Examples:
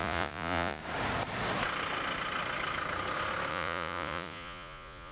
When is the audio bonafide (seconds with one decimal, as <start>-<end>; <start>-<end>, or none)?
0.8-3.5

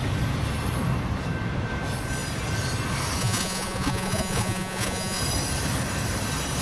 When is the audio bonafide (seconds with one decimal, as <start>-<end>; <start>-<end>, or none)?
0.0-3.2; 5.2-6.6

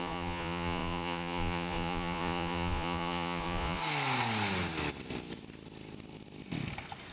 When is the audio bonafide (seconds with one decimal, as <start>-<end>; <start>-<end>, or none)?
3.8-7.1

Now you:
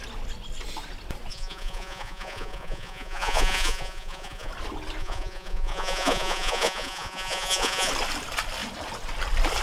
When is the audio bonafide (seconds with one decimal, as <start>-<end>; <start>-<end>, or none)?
0.0-1.3; 4.5-5.0; 7.9-9.6

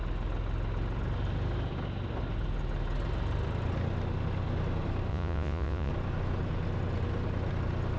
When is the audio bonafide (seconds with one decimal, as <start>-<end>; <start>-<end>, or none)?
0.0-5.1; 5.9-8.0

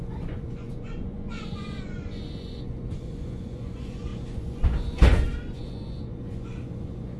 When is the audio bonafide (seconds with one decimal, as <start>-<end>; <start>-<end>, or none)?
none

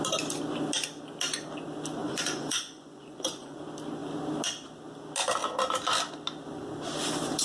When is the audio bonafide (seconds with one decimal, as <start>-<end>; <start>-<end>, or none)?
0.0-2.0; 3.6-7.4

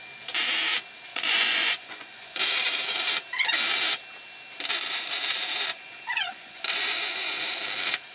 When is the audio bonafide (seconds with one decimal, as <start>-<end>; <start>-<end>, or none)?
0.0-1.1; 2.4-5.7; 7.5-8.1